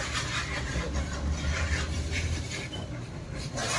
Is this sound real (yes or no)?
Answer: no